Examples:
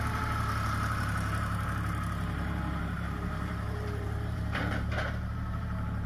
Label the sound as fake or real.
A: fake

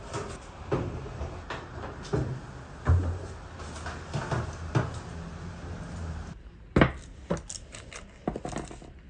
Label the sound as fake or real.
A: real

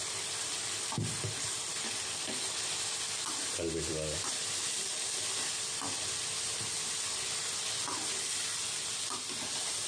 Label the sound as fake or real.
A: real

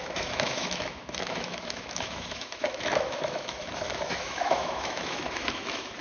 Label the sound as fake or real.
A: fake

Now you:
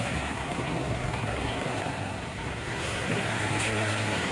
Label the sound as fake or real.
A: fake